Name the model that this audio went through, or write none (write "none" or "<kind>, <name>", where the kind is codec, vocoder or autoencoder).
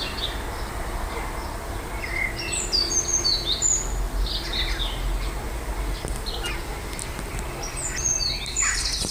none